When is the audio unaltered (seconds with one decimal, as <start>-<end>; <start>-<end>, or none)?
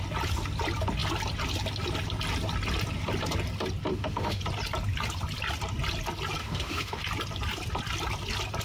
0.0-3.9; 4.4-6.4; 7.0-8.6